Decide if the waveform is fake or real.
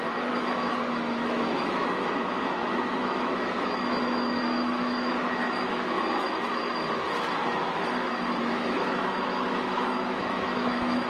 fake